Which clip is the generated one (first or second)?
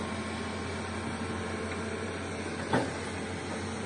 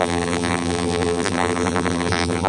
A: second